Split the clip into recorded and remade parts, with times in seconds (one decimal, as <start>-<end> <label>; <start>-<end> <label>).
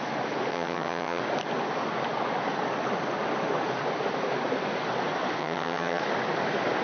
0.0-0.5 recorded; 0.5-1.2 remade; 1.2-5.4 recorded; 5.4-6.0 remade; 6.0-6.8 recorded